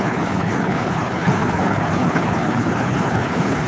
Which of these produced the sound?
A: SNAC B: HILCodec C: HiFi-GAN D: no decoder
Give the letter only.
B